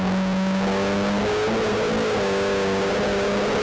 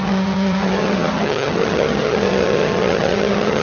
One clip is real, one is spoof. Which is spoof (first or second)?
second